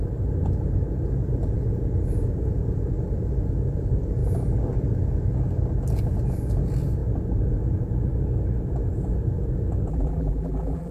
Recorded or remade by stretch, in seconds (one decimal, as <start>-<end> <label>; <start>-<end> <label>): 0.0-9.9 recorded; 9.9-10.9 remade